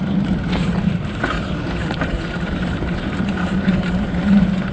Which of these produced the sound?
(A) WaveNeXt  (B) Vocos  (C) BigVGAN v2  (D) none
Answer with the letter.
C